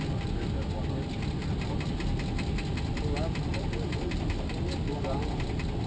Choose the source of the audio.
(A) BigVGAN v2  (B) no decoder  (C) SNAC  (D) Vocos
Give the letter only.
B